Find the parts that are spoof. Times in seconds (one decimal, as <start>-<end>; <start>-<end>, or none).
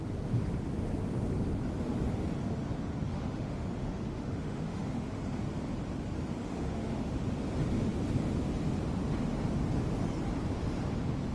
3.1-5.2; 6.4-7.2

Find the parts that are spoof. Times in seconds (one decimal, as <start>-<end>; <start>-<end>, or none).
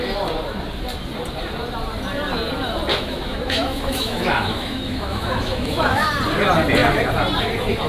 2.9-6.1